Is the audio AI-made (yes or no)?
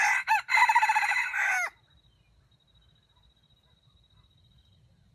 no